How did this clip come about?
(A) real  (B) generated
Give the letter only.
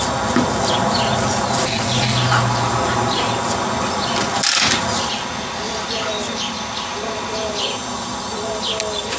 A